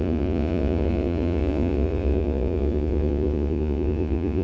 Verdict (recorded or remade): remade